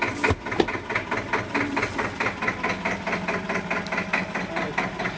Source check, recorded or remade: recorded